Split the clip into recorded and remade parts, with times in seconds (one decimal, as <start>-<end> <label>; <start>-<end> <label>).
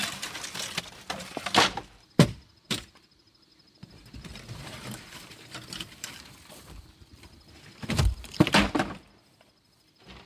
0.0-10.3 remade